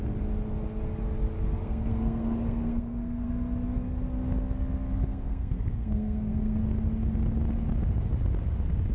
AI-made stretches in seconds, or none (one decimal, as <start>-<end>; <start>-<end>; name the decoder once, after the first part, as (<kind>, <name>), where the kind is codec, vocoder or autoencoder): 1.6-3.3 (codec, SNAC); 5.1-6.6